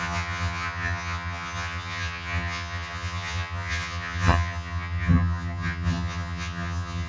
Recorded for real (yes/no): no